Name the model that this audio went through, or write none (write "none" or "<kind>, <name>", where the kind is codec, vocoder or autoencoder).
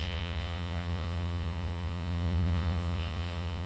vocoder, Vocos